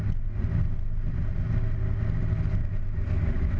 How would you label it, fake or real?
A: real